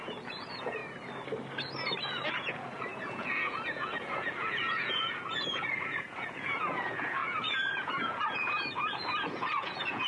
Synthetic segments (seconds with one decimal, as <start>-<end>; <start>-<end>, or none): 0.0-0.8; 2.1-10.1